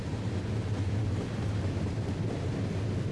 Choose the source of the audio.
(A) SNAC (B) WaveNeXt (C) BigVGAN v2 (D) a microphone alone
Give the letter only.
D